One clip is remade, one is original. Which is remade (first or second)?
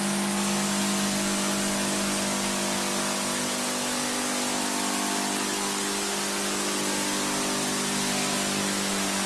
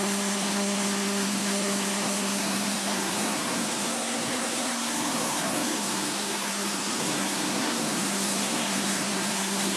second